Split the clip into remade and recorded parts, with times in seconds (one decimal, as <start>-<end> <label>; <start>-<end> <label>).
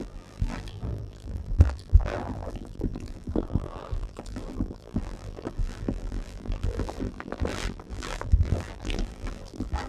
0.0-9.9 remade